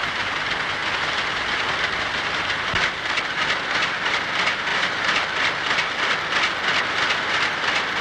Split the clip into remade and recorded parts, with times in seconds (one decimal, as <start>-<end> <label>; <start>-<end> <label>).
0.0-4.7 recorded; 4.7-5.4 remade; 5.4-8.0 recorded